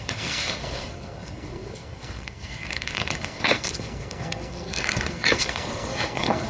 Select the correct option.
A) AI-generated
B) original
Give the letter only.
A